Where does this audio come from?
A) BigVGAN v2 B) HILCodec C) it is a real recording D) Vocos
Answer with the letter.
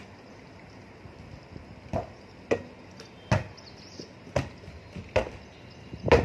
C